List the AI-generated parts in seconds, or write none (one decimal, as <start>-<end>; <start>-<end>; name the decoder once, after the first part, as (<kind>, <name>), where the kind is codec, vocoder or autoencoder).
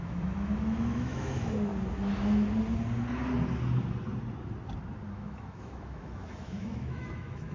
0.0-1.7 (autoencoder, DAC-VAE); 5.1-7.5